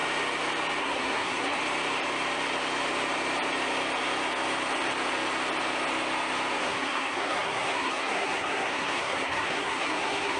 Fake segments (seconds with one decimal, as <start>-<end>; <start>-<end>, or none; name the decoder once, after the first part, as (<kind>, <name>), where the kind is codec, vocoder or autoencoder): 0.8-1.6 (codec, SNAC); 6.6-10.4